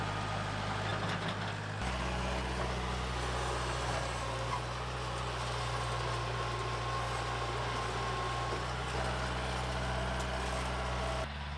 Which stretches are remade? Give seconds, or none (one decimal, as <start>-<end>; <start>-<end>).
none